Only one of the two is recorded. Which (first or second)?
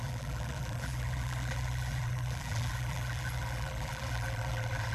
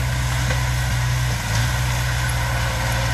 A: second